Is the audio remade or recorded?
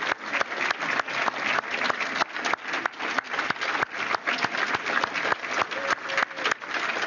recorded